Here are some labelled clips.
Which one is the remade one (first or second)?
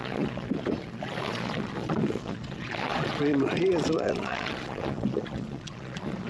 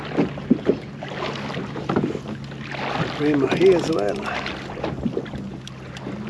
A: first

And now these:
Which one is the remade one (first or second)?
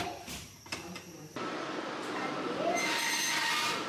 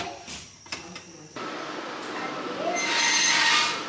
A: first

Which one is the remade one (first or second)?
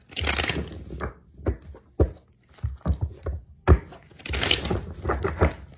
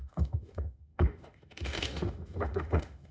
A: second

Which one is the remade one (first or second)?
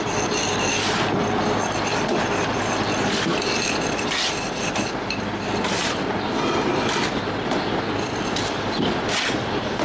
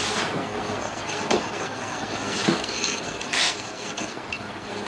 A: second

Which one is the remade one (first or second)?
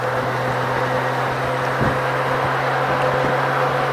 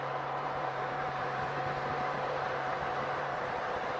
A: second